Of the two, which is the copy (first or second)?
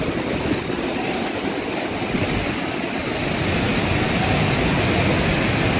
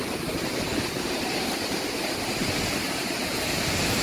second